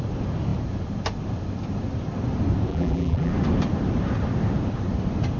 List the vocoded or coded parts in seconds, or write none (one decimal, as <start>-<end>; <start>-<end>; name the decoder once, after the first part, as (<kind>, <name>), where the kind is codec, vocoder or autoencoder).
2.7-3.3 (vocoder, BigVGAN v2)